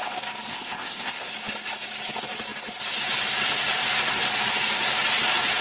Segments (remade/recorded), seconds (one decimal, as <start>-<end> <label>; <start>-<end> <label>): 0.0-0.5 recorded; 0.5-1.3 remade; 1.3-5.6 recorded